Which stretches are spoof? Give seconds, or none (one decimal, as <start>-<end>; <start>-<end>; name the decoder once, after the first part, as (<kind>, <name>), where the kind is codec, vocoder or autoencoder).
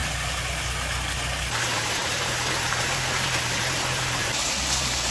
1.6-5.1 (vocoder, BigVGAN v2)